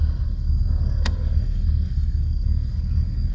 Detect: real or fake fake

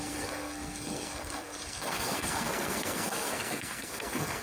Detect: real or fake fake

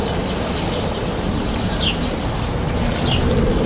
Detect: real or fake real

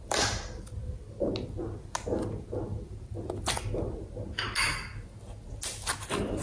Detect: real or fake real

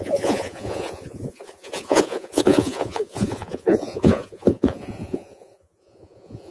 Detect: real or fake fake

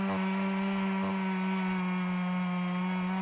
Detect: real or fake real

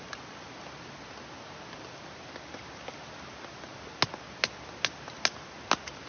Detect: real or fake real